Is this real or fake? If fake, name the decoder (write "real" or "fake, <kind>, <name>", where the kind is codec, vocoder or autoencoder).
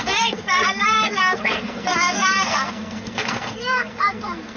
fake, codec, SNAC